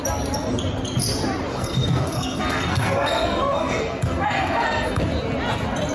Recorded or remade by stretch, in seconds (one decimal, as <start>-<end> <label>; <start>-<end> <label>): 0.0-1.5 recorded; 1.5-5.0 remade; 5.0-5.9 recorded

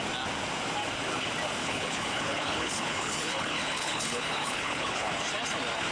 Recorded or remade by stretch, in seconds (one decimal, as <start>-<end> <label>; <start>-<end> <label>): 0.0-1.6 recorded; 1.6-5.1 remade; 5.1-5.9 recorded

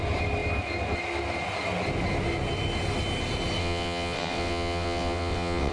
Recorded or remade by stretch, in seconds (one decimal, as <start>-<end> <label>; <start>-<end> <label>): 0.0-3.6 recorded; 3.6-5.7 remade

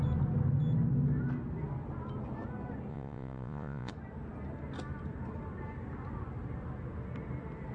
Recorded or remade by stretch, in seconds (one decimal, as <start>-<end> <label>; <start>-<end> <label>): 0.0-2.9 recorded; 2.9-3.9 remade; 3.9-7.7 recorded

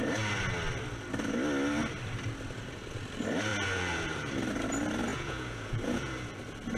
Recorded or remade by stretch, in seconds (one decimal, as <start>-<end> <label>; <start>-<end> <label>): 0.0-3.5 recorded; 3.5-4.3 remade; 4.3-5.1 recorded; 5.1-6.3 remade; 6.3-6.8 recorded

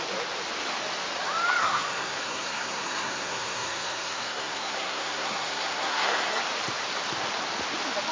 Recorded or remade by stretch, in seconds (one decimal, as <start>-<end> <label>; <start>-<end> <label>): 0.0-1.6 recorded; 1.6-6.4 remade; 6.4-8.1 recorded